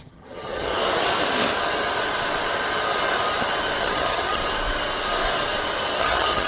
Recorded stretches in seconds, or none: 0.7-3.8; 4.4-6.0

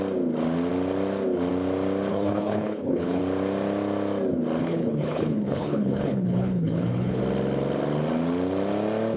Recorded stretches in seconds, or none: 0.0-2.1; 3.2-4.6; 7.2-9.2

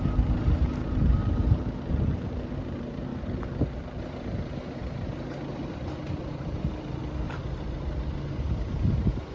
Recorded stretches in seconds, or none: 1.2-1.7; 3.1-4.2; 4.8-6.3; 7.0-7.6

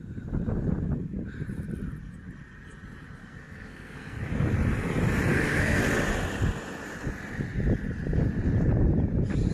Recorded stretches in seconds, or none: 0.0-3.2; 4.3-5.3; 5.8-9.5